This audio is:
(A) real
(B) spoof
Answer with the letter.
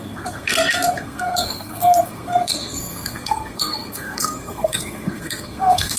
B